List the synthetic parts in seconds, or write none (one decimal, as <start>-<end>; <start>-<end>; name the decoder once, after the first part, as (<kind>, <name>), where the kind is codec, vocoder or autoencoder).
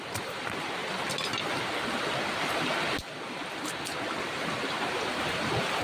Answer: 0.0-0.8 (vocoder, BigVGAN v2); 4.2-5.8